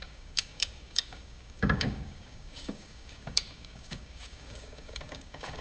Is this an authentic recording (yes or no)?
no